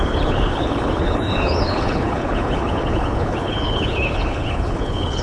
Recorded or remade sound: remade